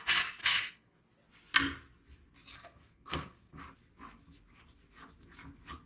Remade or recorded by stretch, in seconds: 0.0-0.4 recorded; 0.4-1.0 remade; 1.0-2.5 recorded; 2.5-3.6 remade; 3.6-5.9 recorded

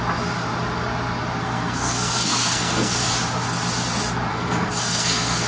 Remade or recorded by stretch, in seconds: 0.0-1.4 recorded; 1.4-3.1 remade; 3.1-4.3 recorded; 4.3-5.5 remade

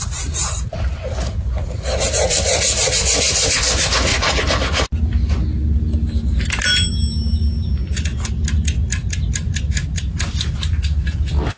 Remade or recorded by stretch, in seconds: 0.0-11.6 recorded